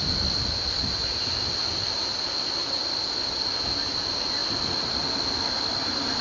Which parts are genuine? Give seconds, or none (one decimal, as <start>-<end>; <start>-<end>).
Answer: 0.0-6.2